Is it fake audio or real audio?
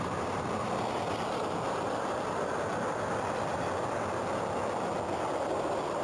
real